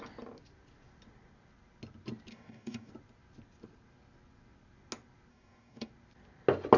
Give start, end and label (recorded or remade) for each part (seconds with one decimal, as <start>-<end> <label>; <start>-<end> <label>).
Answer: 0.0-2.3 recorded; 2.3-2.9 remade; 2.9-5.3 recorded; 5.3-5.9 remade; 5.9-6.8 recorded